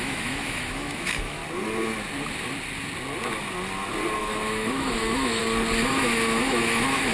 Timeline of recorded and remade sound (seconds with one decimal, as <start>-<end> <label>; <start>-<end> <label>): 0.0-1.4 remade; 1.4-4.2 recorded; 4.2-5.4 remade; 5.4-5.9 recorded; 5.9-7.1 remade